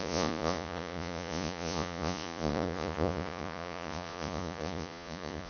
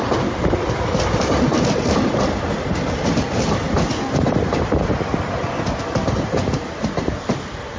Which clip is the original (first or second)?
second